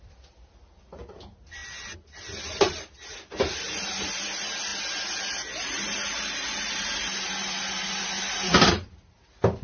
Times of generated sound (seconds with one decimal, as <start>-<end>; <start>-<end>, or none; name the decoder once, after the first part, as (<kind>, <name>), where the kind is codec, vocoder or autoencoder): none